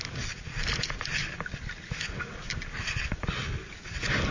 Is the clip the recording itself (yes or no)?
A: yes